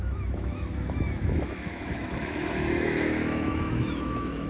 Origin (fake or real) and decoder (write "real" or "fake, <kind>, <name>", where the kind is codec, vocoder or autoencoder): fake, autoencoder, DAC-VAE